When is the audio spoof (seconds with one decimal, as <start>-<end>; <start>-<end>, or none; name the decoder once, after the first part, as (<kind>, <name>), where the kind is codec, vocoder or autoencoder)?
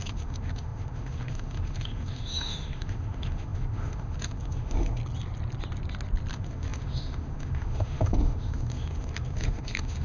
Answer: 0.0-5.0 (autoencoder, DAC-VAE); 6.3-10.0